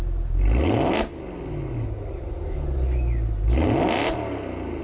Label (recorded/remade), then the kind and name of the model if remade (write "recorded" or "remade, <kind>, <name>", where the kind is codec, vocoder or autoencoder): recorded